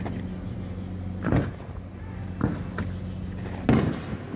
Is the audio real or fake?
real